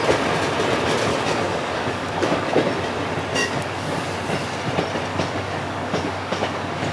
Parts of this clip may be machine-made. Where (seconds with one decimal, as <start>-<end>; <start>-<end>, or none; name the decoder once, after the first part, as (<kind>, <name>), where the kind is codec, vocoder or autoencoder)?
1.1-2.5 (codec, DAC); 3.4-4.0; 5.1-6.9